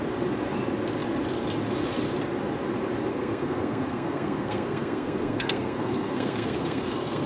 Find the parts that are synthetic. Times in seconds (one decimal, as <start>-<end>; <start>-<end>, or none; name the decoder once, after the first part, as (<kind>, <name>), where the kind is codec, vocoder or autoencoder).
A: 3.1-7.3 (codec, SNAC)

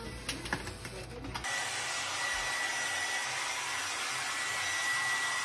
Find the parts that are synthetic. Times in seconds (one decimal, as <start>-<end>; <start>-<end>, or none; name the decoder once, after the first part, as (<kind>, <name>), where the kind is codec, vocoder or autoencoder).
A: none